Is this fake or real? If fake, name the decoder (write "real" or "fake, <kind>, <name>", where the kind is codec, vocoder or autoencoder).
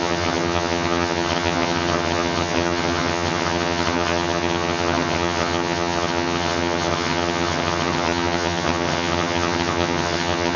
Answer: fake, vocoder, HiFi-GAN